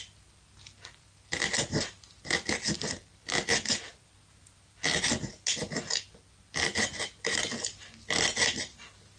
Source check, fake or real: real